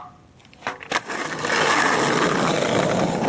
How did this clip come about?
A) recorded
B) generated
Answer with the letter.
A